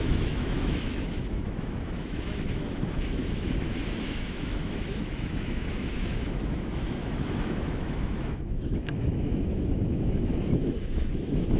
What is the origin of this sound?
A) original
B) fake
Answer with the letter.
B